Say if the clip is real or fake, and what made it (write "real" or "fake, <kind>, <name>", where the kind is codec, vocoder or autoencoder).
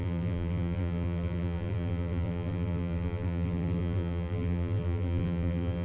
fake, vocoder, BigVGAN v2